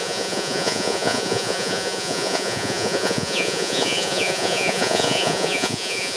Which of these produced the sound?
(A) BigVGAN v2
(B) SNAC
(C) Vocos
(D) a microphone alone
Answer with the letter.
C